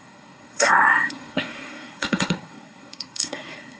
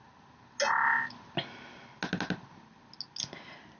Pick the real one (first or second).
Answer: second